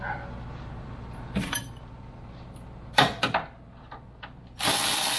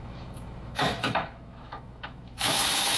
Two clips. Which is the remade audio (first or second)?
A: second